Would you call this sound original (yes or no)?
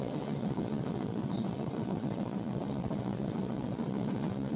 no